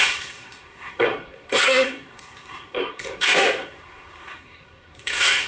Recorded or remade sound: remade